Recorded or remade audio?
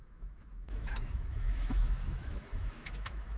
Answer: remade